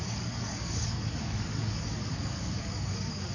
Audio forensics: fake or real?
fake